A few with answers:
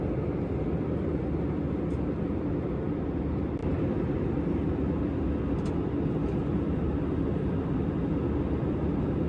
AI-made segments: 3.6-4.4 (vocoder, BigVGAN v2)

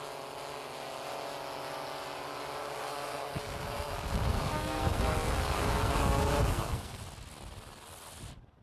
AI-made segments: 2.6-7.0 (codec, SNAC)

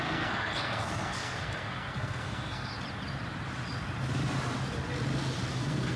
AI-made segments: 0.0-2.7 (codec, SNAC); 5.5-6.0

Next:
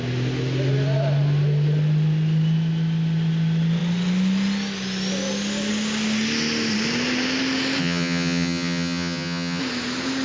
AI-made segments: 7.8-9.6 (vocoder, HiFi-GAN)